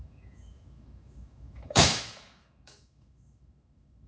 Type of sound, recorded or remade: remade